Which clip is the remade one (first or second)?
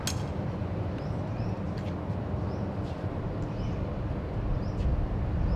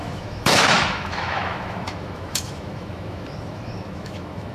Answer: second